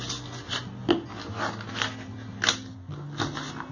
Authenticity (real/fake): real